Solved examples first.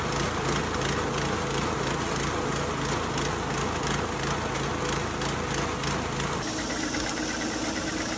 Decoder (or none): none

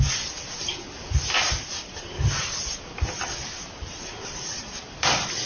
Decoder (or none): none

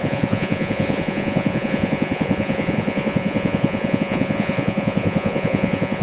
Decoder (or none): vocoder, Vocos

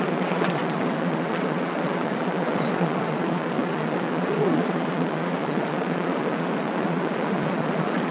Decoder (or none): vocoder, Vocos